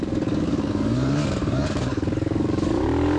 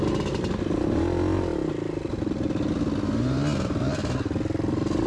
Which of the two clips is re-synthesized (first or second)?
first